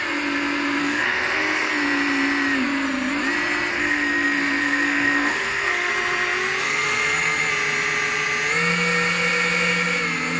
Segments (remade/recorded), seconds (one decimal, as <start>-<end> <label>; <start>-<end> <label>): 0.0-0.8 recorded; 0.8-1.7 remade; 1.7-3.7 recorded; 3.7-5.9 remade; 5.9-6.6 recorded; 6.6-7.4 remade; 7.4-10.4 recorded